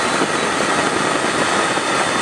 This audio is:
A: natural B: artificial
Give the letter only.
A